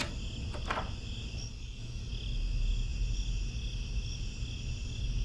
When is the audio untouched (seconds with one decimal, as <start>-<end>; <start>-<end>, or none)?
0.0-1.5; 2.1-5.2